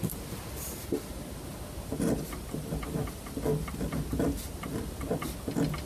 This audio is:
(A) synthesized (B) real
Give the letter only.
B